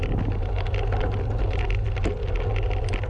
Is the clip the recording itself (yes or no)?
yes